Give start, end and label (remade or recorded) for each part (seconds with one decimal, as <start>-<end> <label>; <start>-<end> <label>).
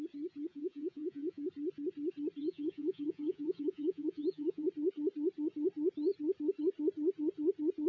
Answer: 0.0-0.5 recorded; 0.5-1.5 remade; 1.5-2.4 recorded; 2.4-4.7 remade; 4.7-7.9 recorded